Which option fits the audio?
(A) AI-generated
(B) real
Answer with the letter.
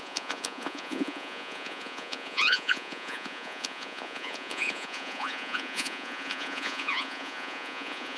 A